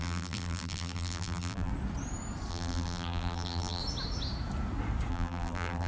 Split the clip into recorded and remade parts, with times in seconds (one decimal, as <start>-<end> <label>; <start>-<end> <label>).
0.0-1.7 remade; 1.7-2.5 recorded; 2.5-3.8 remade; 3.8-5.1 recorded; 5.1-5.9 remade